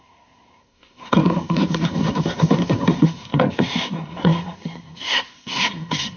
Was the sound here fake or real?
fake